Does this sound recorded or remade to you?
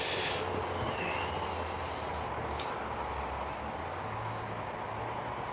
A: recorded